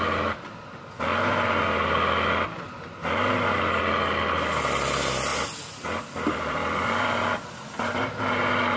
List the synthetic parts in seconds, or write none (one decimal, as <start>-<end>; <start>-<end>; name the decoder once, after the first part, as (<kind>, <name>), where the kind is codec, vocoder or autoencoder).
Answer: 5.3-8.2 (vocoder, BigVGAN v2)